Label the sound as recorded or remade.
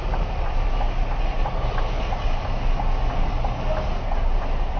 recorded